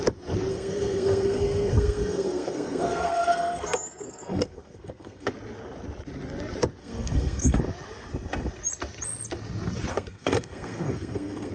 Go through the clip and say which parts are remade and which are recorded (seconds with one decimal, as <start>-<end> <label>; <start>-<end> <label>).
0.0-0.5 recorded; 0.5-5.3 remade; 5.3-6.8 recorded; 6.8-7.6 remade; 7.6-9.9 recorded; 9.9-11.5 remade